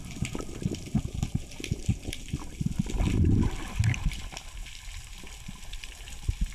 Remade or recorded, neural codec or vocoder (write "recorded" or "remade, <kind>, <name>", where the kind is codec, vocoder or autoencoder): recorded